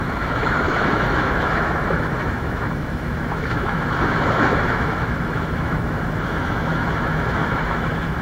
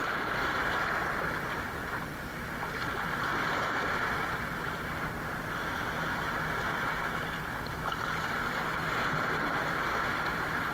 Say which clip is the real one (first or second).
second